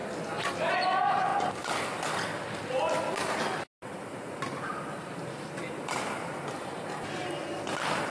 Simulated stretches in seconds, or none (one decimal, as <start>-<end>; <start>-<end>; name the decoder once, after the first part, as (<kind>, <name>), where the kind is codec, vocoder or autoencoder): 0.0-0.7 (vocoder, BigVGAN v2); 1.3-3.4